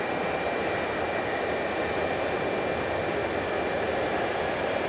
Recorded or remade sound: recorded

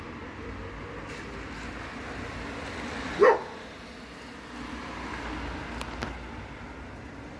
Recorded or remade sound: recorded